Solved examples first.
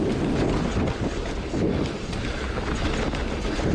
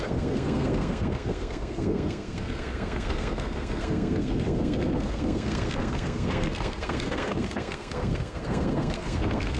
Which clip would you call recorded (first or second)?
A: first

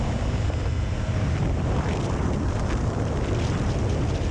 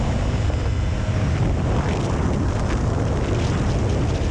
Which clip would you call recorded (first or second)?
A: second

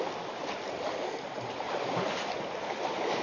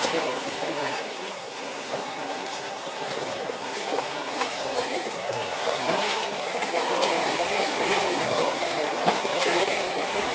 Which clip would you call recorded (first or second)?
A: first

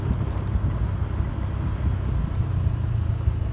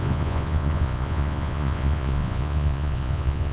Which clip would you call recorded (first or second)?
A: first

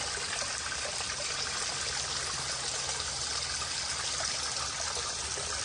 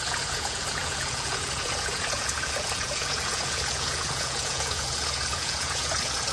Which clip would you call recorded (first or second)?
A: first